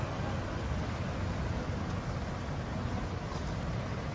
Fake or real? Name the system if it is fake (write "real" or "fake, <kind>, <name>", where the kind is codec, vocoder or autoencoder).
real